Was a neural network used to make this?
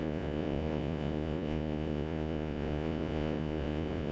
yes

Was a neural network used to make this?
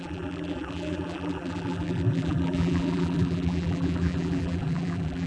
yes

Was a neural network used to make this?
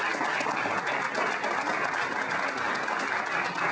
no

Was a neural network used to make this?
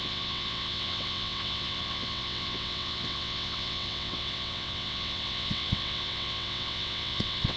yes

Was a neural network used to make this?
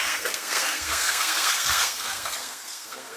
yes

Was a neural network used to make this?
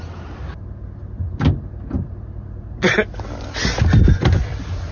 no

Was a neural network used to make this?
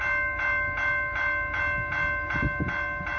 no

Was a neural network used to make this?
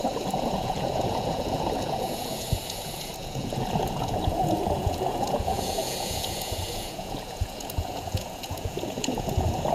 yes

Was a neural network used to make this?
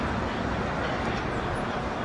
no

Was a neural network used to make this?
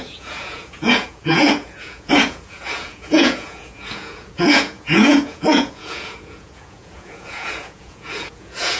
yes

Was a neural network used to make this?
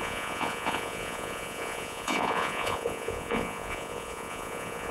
yes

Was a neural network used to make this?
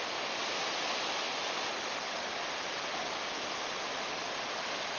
no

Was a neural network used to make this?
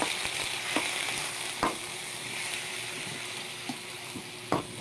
no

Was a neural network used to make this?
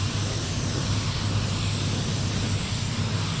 no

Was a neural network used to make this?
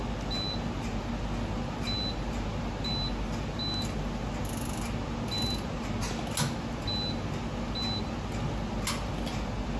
no